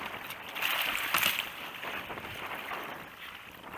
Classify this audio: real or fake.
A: real